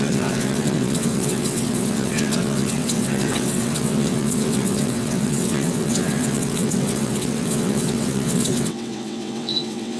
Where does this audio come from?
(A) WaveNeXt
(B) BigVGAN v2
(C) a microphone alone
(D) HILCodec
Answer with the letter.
A